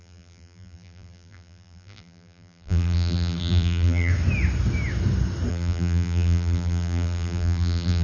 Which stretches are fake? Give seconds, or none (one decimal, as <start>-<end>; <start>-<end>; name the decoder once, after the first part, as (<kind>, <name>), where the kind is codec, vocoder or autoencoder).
0.0-4.1 (vocoder, BigVGAN v2); 5.5-8.0